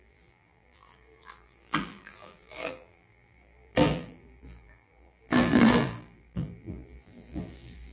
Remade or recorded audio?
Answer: remade